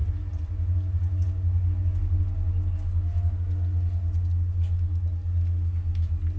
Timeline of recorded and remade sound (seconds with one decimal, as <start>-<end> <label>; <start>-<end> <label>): 0.0-6.4 recorded

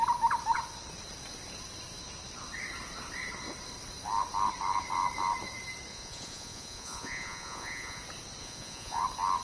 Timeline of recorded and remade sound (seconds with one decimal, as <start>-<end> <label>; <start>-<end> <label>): 0.0-5.9 recorded; 5.9-8.0 remade; 8.0-8.4 recorded; 8.4-9.0 remade; 9.0-9.4 recorded

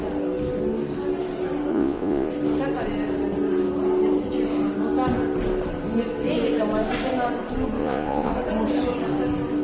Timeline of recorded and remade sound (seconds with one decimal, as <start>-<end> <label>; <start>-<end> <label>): 0.0-1.7 recorded; 1.7-2.3 remade; 2.3-7.8 recorded; 7.8-8.3 remade; 8.3-9.6 recorded

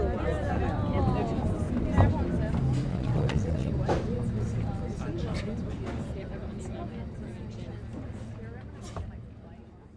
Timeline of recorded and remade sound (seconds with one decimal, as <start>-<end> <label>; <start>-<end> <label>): 0.0-2.9 recorded; 2.9-3.7 remade; 3.7-10.0 recorded

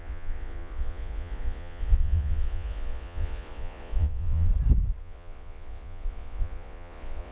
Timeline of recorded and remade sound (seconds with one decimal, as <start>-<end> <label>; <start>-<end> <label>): 0.0-4.5 remade; 4.5-5.0 recorded; 5.0-7.3 remade

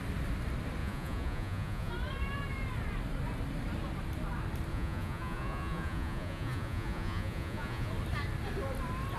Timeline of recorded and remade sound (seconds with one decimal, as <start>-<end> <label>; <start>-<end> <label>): 0.0-0.8 recorded; 0.8-1.9 remade; 1.9-4.7 recorded; 4.7-7.9 remade; 7.9-9.2 recorded